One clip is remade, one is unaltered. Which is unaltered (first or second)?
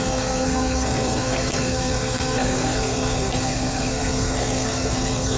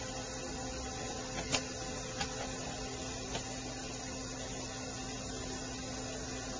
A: second